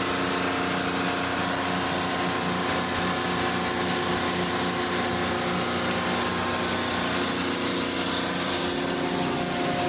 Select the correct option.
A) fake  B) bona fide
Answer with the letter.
B